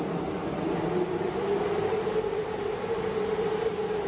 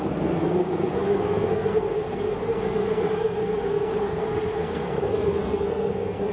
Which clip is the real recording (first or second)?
first